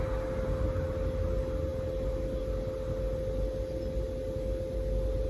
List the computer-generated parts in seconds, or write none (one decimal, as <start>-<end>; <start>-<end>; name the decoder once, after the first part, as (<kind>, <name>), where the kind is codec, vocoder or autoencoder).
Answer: none